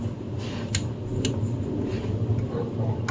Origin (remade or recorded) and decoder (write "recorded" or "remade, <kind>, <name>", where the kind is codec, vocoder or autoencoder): recorded